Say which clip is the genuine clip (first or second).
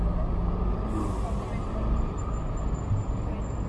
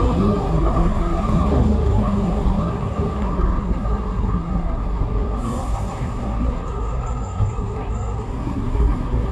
first